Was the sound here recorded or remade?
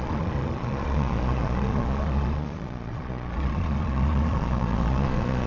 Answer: remade